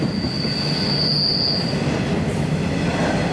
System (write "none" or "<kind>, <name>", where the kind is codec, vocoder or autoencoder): none